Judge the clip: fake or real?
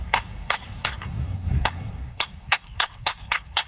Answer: fake